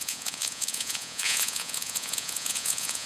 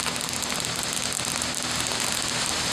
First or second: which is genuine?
second